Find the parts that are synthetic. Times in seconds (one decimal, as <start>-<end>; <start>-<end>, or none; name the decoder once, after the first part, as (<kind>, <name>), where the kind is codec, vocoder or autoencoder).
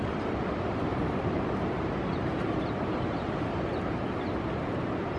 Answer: 0.9-4.0 (vocoder, BigVGAN v2)